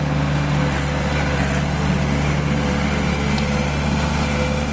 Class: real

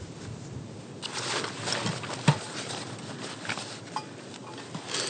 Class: real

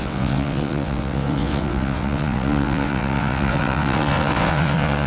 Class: fake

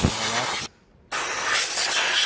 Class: real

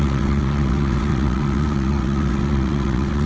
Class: fake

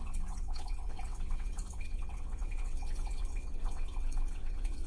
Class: fake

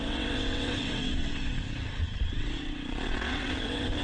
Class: fake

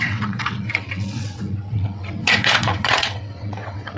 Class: fake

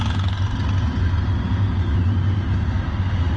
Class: real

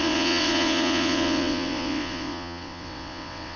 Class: fake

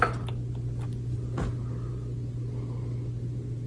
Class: real